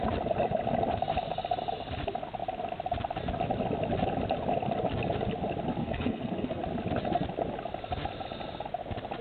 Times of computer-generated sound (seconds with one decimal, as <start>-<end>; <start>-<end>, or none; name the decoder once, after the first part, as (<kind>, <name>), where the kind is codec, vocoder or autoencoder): 5.8-6.6 (codec, SNAC)